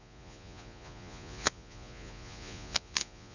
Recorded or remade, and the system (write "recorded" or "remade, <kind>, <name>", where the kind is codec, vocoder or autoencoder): remade, vocoder, Vocos